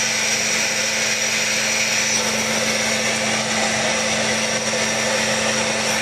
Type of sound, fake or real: real